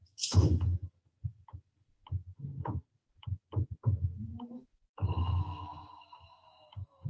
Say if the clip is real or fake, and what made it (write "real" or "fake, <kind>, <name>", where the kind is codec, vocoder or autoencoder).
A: fake, autoencoder, DAC-VAE